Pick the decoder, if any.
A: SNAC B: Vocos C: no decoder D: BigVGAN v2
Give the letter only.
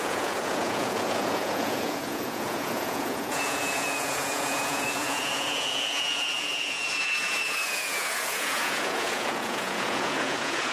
B